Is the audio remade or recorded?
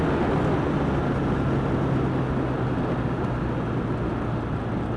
recorded